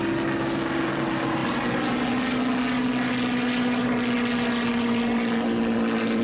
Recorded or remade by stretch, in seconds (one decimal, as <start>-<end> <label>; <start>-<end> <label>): 0.0-6.2 recorded